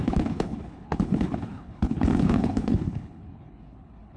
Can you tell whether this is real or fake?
fake